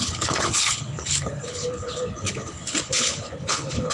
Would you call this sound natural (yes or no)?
no